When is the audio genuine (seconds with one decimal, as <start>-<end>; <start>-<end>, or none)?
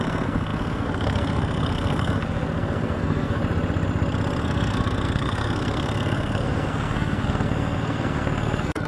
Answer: 3.4-4.4